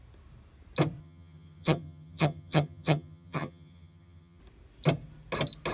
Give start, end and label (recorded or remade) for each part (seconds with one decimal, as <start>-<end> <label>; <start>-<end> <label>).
0.0-1.0 recorded; 1.0-4.4 remade; 4.4-5.7 recorded